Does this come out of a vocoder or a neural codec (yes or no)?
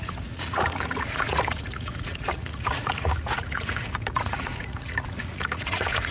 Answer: yes